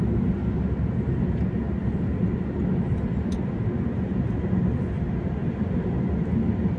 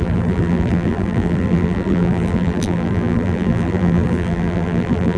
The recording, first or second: first